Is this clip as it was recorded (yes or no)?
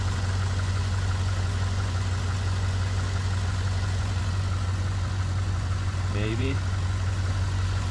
no